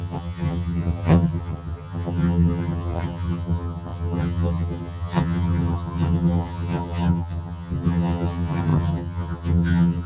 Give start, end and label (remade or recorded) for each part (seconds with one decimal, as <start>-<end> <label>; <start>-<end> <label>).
0.0-10.1 remade

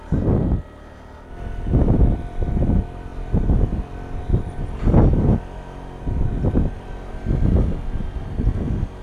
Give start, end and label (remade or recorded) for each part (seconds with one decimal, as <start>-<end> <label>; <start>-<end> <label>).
0.0-9.0 recorded

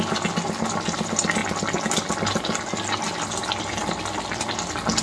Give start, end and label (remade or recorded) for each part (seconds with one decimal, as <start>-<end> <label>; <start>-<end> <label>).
0.0-5.0 recorded

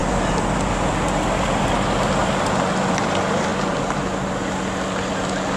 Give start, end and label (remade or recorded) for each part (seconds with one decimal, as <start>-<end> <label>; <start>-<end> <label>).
0.0-1.6 remade; 1.6-2.2 recorded; 2.2-3.1 remade; 3.1-5.6 recorded

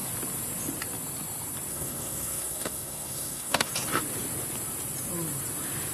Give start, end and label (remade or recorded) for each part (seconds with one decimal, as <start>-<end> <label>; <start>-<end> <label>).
0.0-1.7 recorded; 1.7-3.7 remade; 3.7-5.9 recorded

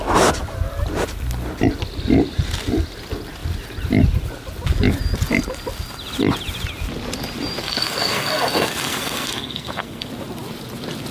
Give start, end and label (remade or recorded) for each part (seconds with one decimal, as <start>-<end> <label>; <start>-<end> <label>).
0.0-7.6 recorded; 7.6-10.1 remade; 10.1-11.1 recorded

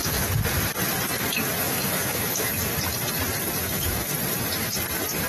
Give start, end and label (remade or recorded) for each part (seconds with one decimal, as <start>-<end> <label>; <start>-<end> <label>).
0.0-1.6 recorded; 1.6-2.7 remade; 2.7-3.6 recorded; 3.6-4.1 remade; 4.1-5.3 recorded